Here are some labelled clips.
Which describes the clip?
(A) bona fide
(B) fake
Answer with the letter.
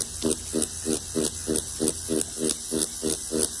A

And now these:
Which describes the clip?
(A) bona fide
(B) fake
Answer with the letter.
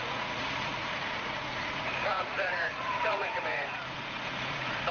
B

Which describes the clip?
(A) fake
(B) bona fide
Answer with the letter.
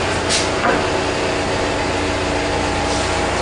B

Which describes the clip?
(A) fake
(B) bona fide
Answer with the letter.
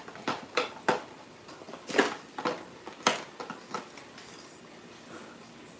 B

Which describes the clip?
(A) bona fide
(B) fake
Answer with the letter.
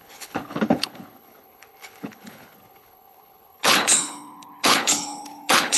B